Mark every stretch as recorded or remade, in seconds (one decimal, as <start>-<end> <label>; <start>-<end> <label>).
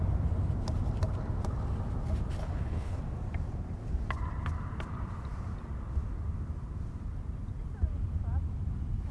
0.0-2.4 recorded; 2.4-3.0 remade; 3.0-9.1 recorded